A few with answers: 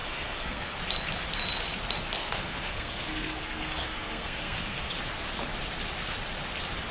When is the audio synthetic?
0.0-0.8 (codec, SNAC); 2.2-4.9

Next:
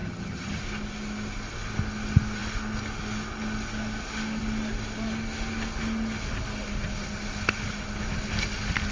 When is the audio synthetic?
0.0-0.6 (vocoder, HiFi-GAN)

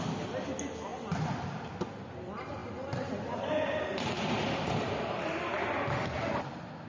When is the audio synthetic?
none

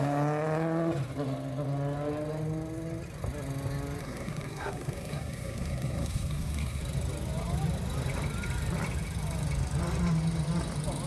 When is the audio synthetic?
4.0-6.8 (codec, SNAC)

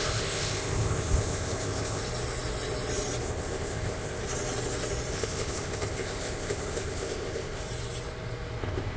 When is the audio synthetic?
0.0-2.0 (codec, ZipCodec); 3.2-4.2; 5.1-7.6; 8.6-9.0

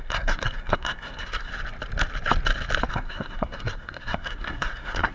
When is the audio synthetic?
0.0-1.5 (codec, SNAC); 2.9-5.1